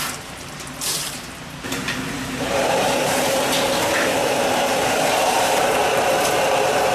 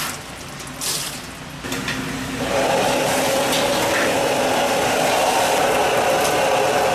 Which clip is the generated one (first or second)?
first